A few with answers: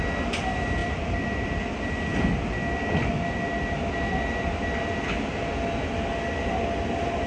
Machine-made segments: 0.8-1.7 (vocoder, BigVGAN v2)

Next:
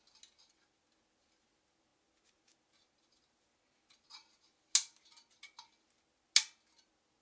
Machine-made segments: none

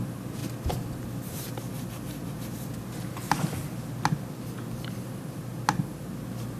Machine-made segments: none

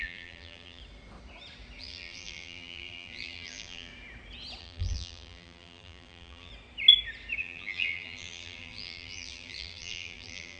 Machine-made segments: 0.0-0.8 (vocoder, BigVGAN v2); 1.8-3.9; 4.6-6.5; 7.4-10.6

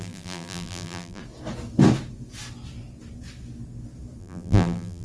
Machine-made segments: 0.0-1.2 (vocoder, BigVGAN v2); 4.2-5.0

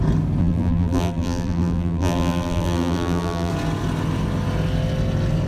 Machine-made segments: 0.4-3.5 (vocoder, BigVGAN v2)

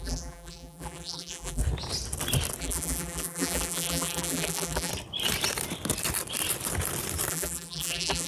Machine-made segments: 0.0-1.6 (vocoder, BigVGAN v2); 2.6-4.9; 7.3-8.3